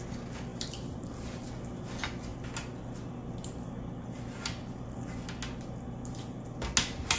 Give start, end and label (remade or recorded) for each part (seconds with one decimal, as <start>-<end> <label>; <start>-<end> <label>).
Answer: 0.0-0.5 recorded; 0.5-1.5 remade; 1.5-7.2 recorded